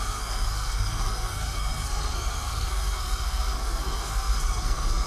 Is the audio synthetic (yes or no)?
yes